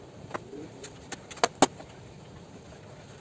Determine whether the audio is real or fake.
real